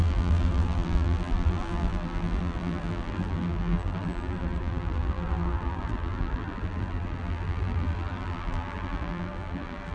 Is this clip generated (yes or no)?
yes